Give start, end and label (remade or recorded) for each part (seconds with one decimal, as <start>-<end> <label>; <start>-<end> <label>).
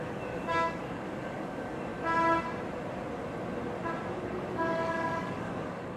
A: 0.0-1.9 remade; 1.9-4.2 recorded; 4.2-6.0 remade